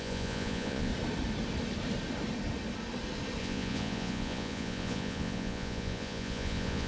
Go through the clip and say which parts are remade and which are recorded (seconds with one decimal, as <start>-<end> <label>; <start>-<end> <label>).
0.0-0.9 remade; 0.9-3.4 recorded; 3.4-6.9 remade